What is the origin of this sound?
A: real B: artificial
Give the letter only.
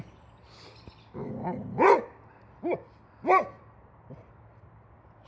A